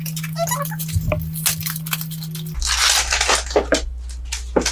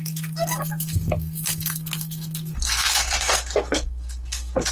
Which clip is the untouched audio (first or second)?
first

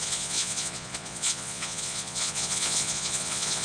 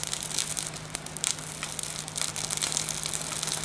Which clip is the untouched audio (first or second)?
second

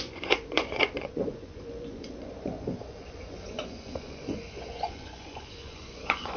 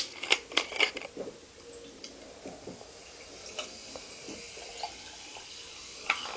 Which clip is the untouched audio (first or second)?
second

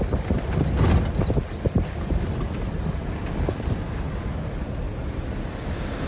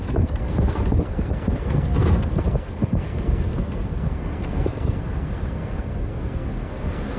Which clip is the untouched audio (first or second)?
first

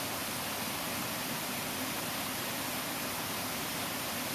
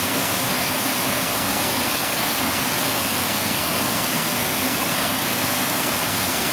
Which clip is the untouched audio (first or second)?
first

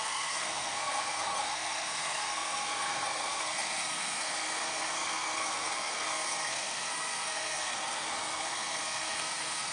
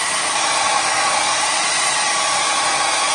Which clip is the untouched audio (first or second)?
second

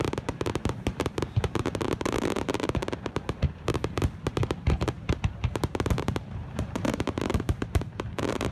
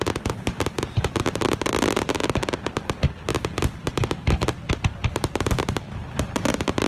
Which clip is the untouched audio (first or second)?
second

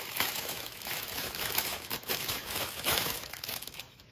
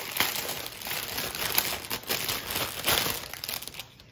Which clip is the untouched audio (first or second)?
second